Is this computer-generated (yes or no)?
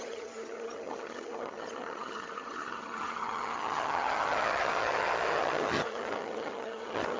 yes